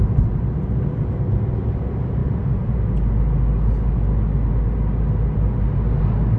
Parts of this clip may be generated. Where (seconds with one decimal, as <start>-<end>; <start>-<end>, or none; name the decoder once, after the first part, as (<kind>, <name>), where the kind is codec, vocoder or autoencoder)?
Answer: none